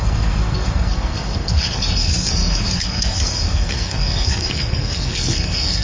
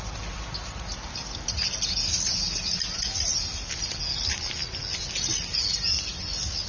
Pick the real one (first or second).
second